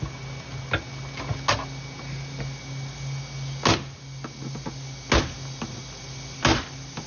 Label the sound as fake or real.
real